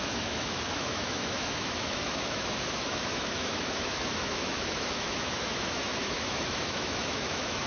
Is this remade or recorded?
remade